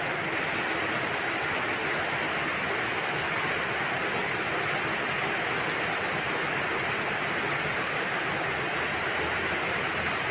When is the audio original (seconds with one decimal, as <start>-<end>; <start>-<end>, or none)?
0.0-10.3